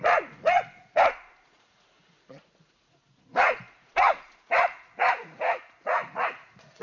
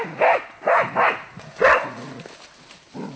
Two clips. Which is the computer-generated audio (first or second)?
first